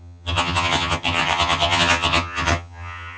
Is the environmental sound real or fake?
fake